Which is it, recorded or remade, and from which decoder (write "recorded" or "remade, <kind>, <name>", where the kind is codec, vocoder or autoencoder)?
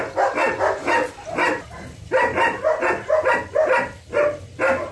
recorded